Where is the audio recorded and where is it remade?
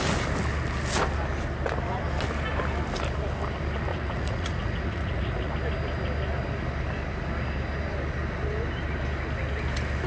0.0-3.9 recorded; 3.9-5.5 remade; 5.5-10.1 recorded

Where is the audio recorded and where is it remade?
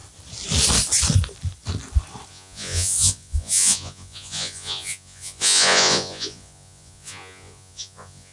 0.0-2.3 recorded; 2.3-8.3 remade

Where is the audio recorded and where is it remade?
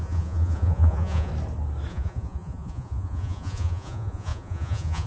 0.0-1.3 remade; 1.3-1.9 recorded; 1.9-5.1 remade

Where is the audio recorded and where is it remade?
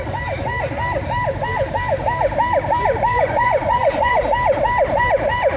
0.0-3.1 recorded; 3.1-4.2 remade; 4.2-5.6 recorded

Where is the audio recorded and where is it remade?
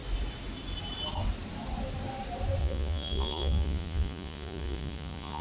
0.0-2.6 recorded; 2.6-5.4 remade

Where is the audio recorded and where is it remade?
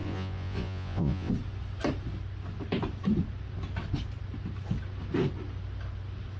0.0-1.3 remade; 1.3-6.4 recorded